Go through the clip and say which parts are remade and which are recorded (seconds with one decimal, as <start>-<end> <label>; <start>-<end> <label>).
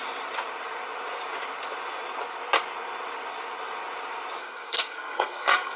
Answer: 0.0-4.4 recorded; 4.4-5.8 remade